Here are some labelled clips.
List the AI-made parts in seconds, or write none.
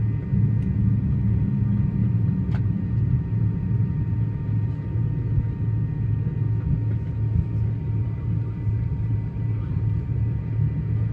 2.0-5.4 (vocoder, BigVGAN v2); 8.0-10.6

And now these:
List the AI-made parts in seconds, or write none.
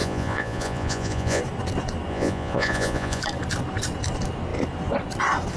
0.0-1.4 (vocoder, Vocos); 2.1-3.2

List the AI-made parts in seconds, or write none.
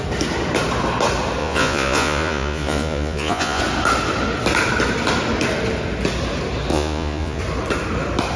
1.4-3.6 (vocoder, Vocos); 6.7-7.4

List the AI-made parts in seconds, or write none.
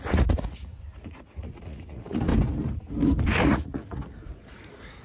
0.0-2.3 (vocoder, Vocos); 3.4-5.0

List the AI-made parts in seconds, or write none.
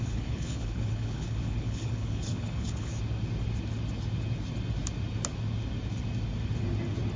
0.0-2.9 (codec, HILCodec)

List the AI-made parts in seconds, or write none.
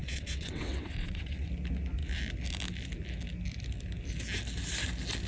0.0-1.5 (vocoder, WaveNeXt)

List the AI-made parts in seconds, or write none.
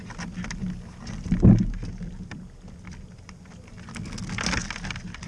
none